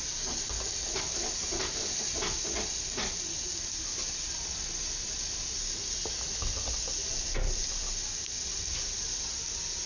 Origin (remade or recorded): recorded